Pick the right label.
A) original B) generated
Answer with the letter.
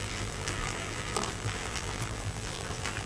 B